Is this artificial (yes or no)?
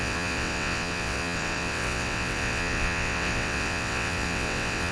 yes